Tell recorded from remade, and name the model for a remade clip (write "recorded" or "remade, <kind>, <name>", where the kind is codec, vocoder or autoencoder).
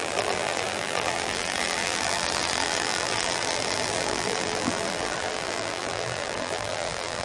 remade, vocoder, BigVGAN v2